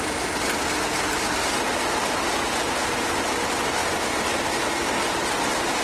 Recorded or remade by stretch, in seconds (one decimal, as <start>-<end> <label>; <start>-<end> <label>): 0.0-5.8 recorded